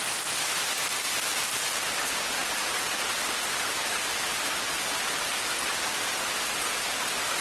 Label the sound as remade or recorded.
recorded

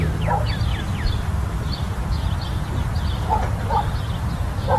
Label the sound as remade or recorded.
recorded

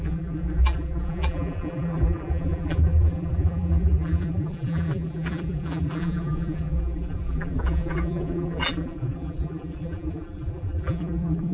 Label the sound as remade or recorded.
remade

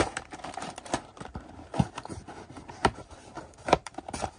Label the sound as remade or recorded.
remade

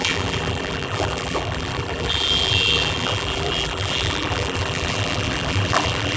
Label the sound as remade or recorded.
remade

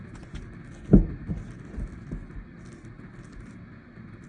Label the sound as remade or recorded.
recorded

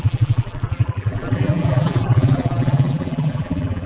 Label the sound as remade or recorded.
remade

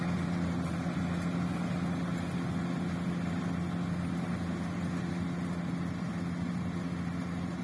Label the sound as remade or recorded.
recorded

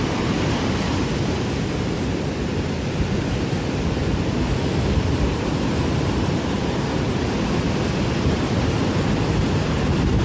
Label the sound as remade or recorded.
remade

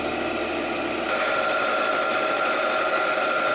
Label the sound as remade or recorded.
recorded